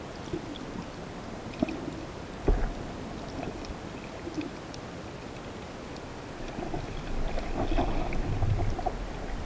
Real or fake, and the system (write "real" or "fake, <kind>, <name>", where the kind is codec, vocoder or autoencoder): real